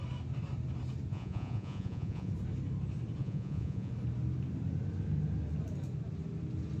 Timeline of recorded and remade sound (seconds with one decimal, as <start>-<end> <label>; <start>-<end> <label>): 0.0-1.1 recorded; 1.1-2.3 remade; 2.3-3.2 recorded; 3.2-3.9 remade; 3.9-6.8 recorded